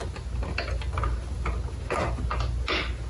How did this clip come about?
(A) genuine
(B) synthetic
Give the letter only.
A